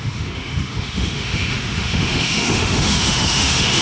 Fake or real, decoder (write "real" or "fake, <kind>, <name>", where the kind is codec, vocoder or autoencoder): fake, autoencoder, DAC-VAE